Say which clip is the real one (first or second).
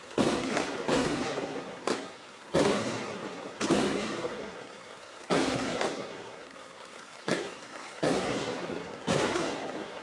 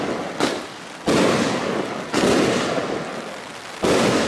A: second